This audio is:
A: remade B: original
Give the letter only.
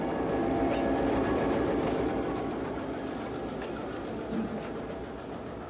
B